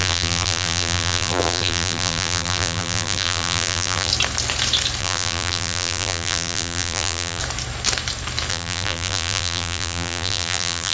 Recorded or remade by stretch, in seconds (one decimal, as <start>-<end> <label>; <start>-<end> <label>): 0.0-4.1 remade; 4.1-5.0 recorded; 5.0-7.4 remade; 7.4-8.5 recorded; 8.5-10.9 remade